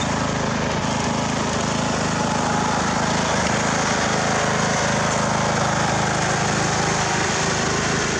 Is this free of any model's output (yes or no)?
yes